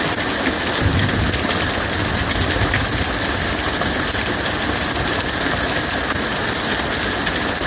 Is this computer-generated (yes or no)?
no